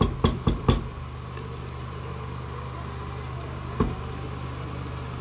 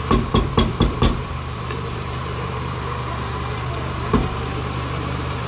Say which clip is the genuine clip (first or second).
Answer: first